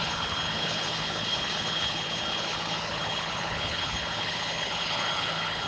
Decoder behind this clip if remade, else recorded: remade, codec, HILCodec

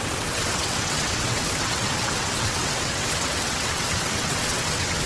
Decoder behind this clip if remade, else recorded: remade, vocoder, WaveNeXt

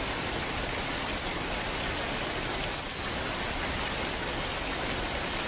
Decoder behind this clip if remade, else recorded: recorded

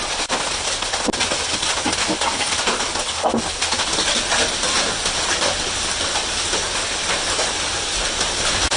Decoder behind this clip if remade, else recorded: recorded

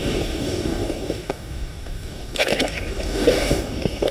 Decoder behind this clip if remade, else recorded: remade, codec, DAC